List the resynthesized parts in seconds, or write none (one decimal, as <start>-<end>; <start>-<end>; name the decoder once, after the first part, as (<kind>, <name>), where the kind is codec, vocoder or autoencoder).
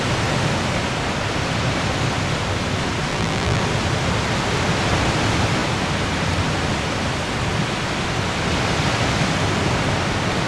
3.1-3.6 (vocoder, BigVGAN v2)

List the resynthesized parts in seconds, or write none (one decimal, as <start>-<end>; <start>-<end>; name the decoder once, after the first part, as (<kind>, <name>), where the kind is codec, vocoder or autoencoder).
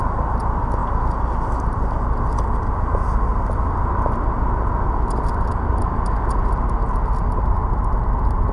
none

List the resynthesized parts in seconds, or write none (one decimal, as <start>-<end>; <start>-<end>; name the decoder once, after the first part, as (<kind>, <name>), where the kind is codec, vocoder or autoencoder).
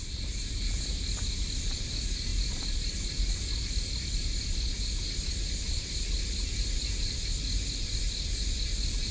none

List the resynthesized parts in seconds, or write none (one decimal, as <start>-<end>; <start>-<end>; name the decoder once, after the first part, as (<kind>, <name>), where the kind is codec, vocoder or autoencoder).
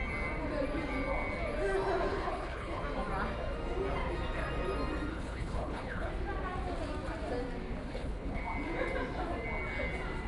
2.1-2.8 (codec, HILCodec); 5.1-6.1; 7.8-8.4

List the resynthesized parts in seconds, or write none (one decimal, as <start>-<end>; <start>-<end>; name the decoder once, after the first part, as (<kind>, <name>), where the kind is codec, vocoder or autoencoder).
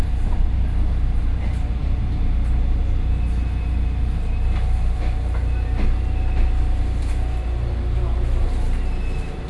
none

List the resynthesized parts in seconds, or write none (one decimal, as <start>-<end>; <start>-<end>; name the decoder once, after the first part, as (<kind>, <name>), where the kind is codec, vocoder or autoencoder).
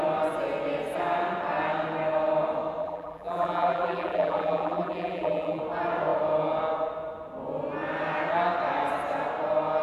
2.8-5.6 (vocoder, BigVGAN v2)